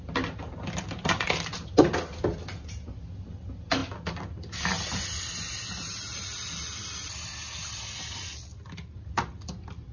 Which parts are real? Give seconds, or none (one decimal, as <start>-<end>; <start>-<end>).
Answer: 0.0-9.9